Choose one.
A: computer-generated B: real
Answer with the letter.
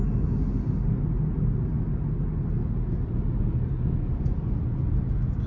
B